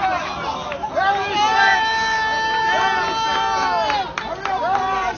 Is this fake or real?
real